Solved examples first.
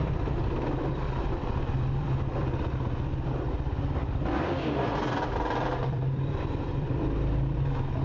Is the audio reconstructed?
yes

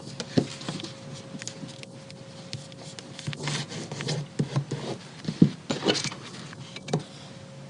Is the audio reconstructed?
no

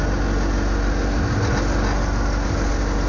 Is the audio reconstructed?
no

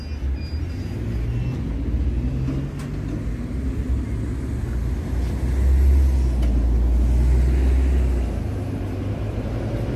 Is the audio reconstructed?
no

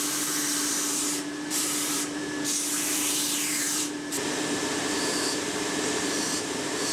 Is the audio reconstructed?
yes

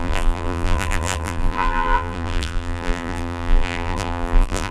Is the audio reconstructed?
yes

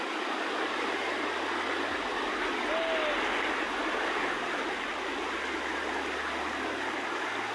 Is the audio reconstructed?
no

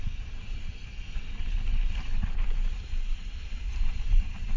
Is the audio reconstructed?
yes